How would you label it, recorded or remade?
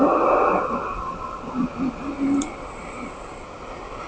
recorded